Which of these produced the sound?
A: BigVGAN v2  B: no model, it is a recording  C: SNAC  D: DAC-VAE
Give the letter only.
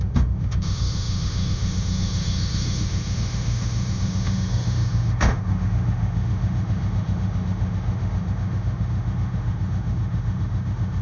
D